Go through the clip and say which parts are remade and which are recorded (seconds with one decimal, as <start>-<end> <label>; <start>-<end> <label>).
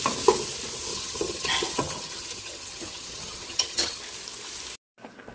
0.0-0.9 recorded; 0.9-4.0 remade; 4.0-5.3 recorded